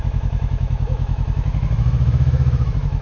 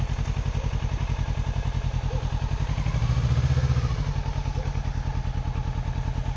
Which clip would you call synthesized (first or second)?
first